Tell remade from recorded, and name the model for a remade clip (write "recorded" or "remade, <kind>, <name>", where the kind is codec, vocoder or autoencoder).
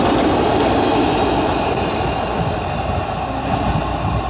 recorded